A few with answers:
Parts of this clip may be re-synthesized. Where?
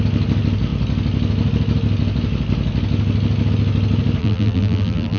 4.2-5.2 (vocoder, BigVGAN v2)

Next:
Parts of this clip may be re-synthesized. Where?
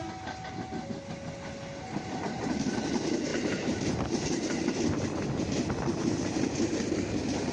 3.3-4.0 (vocoder, BigVGAN v2)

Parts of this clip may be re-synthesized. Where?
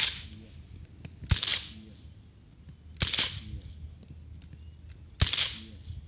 none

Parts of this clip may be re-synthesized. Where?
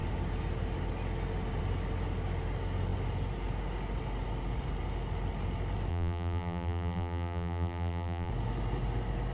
5.9-8.3 (vocoder, BigVGAN v2)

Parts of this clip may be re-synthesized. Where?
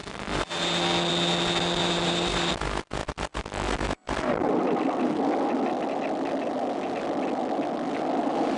1.8-2.5 (vocoder, BigVGAN v2)